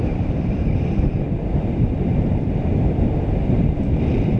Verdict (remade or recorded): remade